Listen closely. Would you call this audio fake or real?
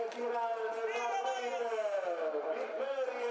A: fake